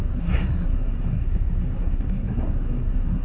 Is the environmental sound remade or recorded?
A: remade